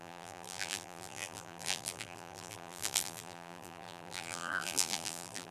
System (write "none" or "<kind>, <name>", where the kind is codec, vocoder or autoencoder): vocoder, BigVGAN v2